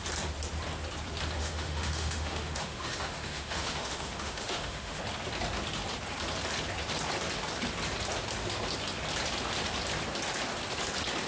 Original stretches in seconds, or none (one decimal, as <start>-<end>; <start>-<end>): 0.0-1.4; 5.0-11.3